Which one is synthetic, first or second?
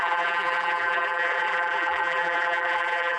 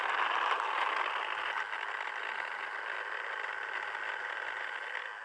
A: first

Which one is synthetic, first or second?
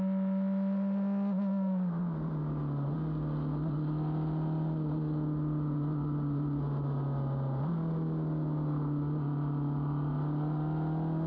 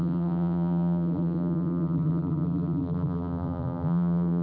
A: second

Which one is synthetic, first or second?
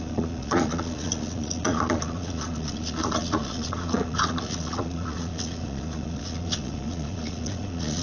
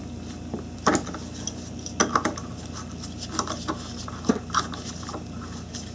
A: first